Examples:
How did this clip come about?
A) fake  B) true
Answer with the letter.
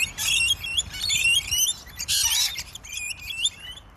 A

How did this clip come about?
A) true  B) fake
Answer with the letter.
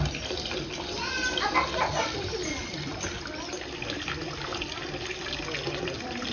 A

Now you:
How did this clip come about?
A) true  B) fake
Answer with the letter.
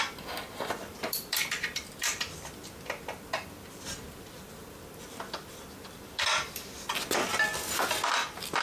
B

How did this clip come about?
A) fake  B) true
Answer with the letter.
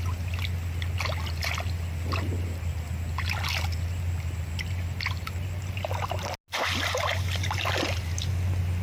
B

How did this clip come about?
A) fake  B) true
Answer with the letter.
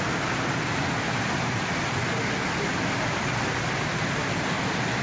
B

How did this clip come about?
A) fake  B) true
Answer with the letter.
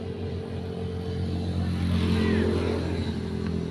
B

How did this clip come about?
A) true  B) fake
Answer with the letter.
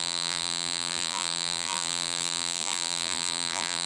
B